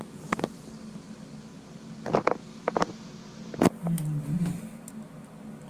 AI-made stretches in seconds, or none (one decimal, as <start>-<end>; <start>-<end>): none